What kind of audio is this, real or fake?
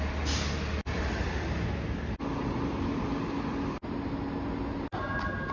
real